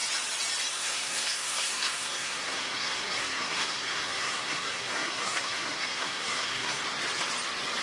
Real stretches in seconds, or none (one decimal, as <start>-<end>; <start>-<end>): 0.0-0.7; 6.8-7.8